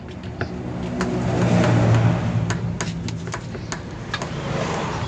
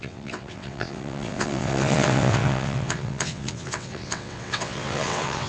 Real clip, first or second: first